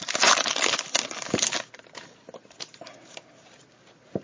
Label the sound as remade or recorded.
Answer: recorded